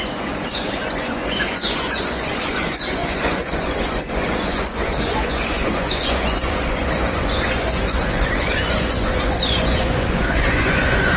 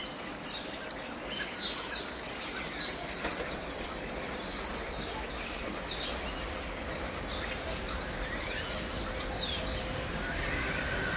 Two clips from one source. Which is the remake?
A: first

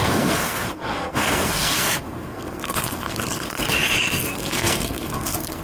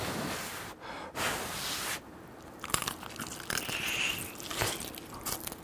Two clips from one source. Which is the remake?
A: first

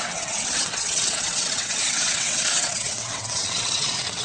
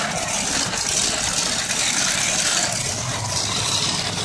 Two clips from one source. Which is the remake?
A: first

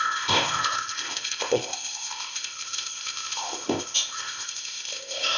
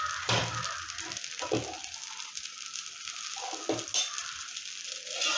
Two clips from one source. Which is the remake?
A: first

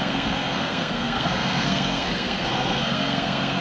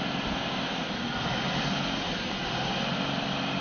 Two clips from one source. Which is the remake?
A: first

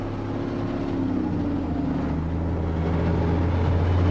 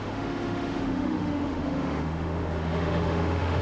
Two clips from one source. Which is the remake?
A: second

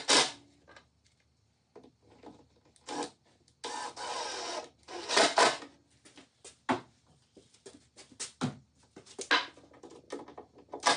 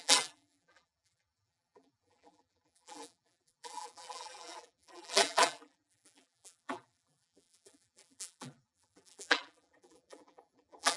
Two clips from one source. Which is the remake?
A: second